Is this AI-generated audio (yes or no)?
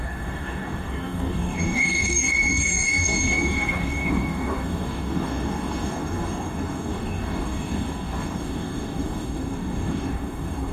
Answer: yes